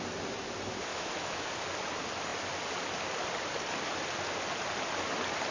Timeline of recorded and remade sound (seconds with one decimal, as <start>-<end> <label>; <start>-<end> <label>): 0.0-0.9 recorded; 0.9-1.5 remade; 1.5-5.5 recorded